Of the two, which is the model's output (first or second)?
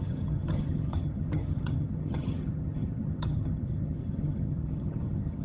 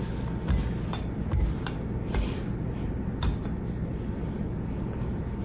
first